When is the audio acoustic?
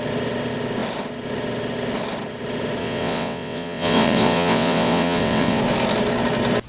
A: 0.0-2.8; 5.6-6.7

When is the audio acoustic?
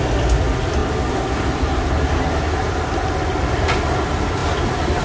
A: 0.0-5.0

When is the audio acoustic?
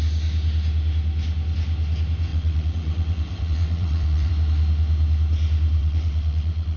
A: 0.0-2.3; 4.3-5.8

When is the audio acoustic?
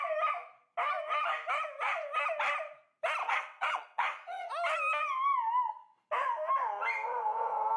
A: 0.0-3.2; 4.5-7.8